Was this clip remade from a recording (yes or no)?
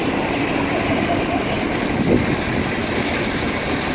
no